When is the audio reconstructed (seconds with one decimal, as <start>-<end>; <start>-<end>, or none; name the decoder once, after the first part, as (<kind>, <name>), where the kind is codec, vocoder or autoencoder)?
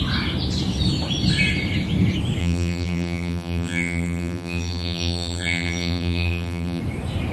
2.4-6.8 (vocoder, BigVGAN v2)